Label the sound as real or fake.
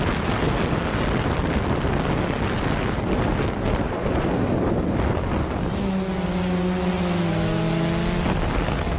real